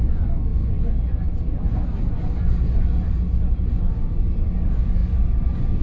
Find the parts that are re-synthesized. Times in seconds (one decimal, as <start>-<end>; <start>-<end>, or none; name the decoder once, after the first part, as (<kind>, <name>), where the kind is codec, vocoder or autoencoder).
none